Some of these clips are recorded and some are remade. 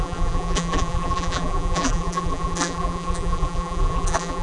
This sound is remade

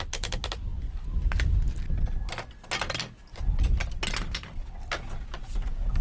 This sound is recorded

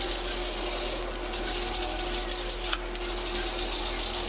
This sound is recorded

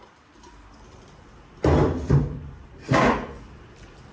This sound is remade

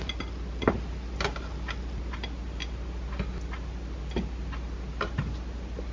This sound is recorded